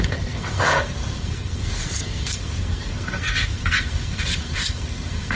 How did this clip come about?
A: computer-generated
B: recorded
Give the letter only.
A